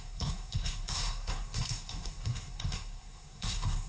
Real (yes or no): no